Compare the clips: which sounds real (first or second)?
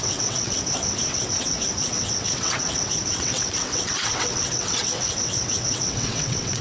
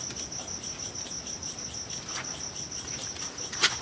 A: second